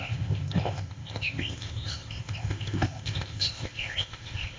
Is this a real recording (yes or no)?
no